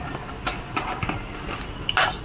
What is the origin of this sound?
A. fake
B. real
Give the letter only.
B